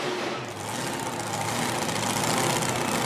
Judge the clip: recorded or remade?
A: recorded